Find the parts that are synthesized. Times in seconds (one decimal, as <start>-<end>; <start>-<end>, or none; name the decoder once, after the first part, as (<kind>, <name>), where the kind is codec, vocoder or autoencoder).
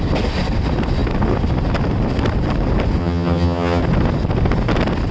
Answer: 3.0-3.8 (vocoder, HiFi-GAN)